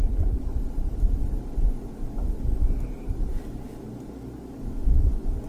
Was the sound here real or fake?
real